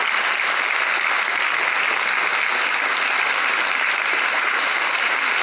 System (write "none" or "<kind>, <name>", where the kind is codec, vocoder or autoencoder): none